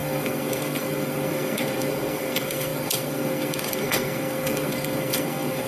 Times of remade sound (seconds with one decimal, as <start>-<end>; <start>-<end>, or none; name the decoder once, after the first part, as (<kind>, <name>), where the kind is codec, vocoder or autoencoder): 0.0-5.7 (codec, SNAC)